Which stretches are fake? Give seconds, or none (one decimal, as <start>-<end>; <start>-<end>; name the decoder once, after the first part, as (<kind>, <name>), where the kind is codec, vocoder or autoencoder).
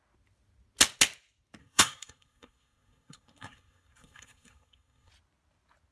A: 1.6-5.1 (codec, SNAC)